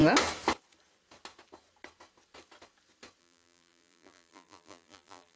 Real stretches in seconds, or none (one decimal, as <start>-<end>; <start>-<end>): 0.0-3.2